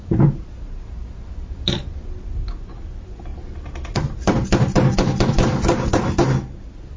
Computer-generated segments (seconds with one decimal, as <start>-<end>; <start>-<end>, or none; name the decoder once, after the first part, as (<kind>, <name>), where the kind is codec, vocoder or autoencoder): none